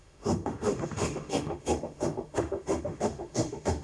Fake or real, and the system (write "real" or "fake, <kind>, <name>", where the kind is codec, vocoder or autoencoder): fake, autoencoder, DAC-VAE